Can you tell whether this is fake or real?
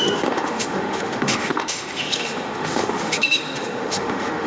fake